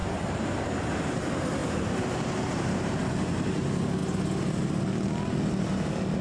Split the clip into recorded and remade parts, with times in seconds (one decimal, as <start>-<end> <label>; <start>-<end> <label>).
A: 0.0-0.6 remade; 0.6-1.6 recorded; 1.6-3.0 remade; 3.0-6.2 recorded

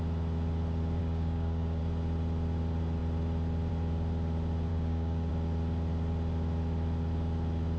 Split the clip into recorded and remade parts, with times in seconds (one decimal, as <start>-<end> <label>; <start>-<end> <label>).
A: 0.0-1.0 recorded; 1.0-1.8 remade; 1.8-4.7 recorded; 4.7-5.3 remade; 5.3-7.8 recorded

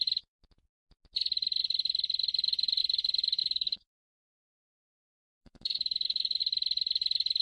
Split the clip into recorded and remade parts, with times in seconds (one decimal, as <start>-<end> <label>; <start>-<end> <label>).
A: 0.0-3.4 recorded; 3.4-6.4 remade; 6.4-7.4 recorded

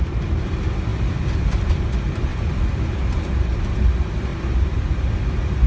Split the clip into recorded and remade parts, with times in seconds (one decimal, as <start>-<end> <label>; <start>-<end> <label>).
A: 0.0-0.9 recorded; 0.9-1.7 remade; 1.7-2.3 recorded; 2.3-2.9 remade; 2.9-4.3 recorded; 4.3-5.1 remade; 5.1-5.7 recorded

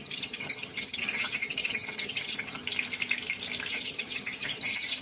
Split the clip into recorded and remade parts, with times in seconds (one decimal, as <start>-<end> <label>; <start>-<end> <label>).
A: 0.0-2.6 remade; 2.6-3.7 recorded; 3.7-5.0 remade

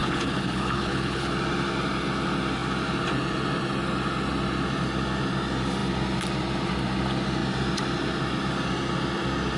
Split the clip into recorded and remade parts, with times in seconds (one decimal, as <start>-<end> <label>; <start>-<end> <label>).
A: 0.0-1.3 remade; 1.3-9.6 recorded

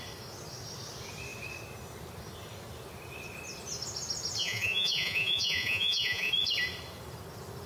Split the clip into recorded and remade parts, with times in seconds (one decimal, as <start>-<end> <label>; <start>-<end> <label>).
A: 0.0-4.4 recorded; 4.4-6.3 remade; 6.3-7.7 recorded

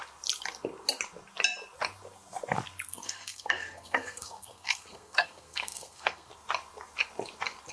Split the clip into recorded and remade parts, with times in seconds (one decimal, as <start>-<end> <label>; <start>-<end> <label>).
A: 0.0-2.9 recorded; 2.9-6.3 remade; 6.3-7.7 recorded